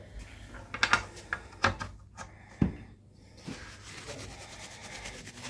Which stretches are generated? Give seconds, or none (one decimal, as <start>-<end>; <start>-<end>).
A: none